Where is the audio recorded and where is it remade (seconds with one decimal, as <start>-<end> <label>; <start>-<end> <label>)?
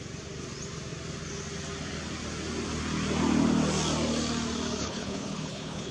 0.0-4.8 recorded; 4.8-5.9 remade